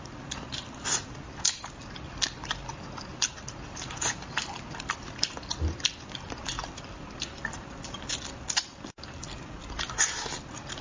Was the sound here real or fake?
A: real